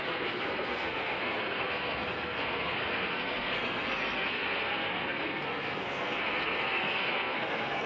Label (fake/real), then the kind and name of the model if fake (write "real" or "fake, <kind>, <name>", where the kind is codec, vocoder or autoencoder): fake, codec, SNAC